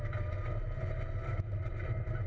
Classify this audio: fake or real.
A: real